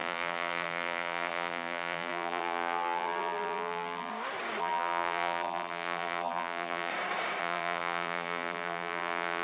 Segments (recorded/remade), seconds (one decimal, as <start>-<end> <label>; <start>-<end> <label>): 0.0-4.1 remade; 4.1-4.6 recorded; 4.6-6.9 remade; 6.9-7.4 recorded; 7.4-9.4 remade